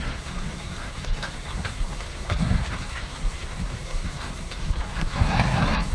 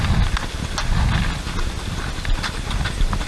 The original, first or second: second